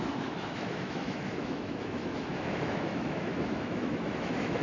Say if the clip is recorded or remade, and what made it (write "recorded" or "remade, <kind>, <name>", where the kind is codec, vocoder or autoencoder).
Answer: remade, autoencoder, DAC-VAE